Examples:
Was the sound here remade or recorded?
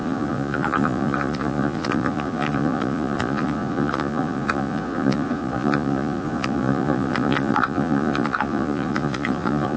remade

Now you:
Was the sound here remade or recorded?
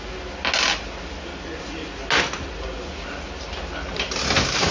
recorded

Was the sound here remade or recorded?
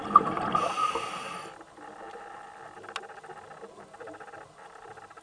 recorded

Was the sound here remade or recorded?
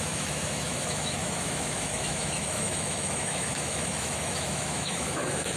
remade